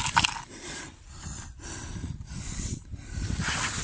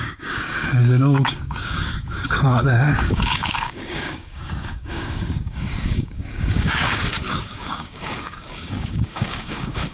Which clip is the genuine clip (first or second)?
first